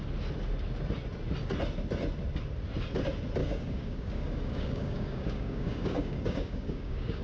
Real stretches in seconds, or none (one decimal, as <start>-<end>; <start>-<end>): 0.0-3.4